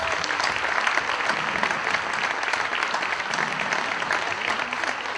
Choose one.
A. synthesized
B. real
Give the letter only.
B